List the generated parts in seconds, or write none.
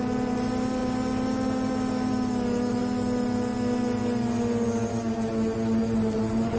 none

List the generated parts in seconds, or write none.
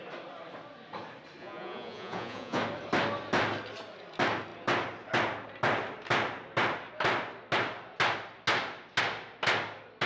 1.4-2.6 (vocoder, Vocos)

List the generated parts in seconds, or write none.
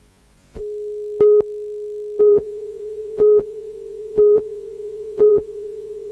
0.0-0.6 (vocoder, Vocos); 2.2-6.1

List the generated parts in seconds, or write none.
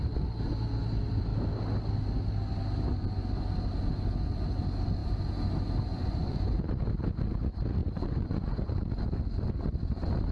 5.9-6.6 (vocoder, Vocos); 7.8-8.7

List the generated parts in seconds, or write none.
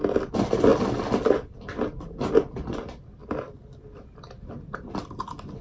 none